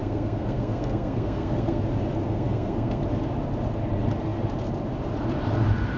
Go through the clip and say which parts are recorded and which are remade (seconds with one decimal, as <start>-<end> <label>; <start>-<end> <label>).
0.0-1.8 remade; 1.8-2.3 recorded; 2.3-3.0 remade; 3.0-6.0 recorded